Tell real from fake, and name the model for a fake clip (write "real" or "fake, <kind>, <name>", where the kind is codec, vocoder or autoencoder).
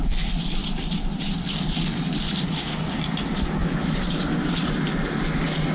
real